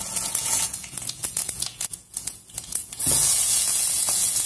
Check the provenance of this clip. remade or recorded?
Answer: remade